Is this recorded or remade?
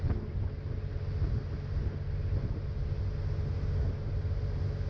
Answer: recorded